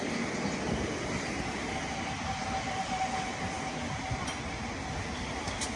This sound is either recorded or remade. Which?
recorded